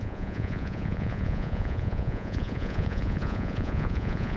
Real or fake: fake